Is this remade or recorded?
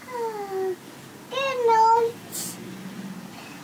recorded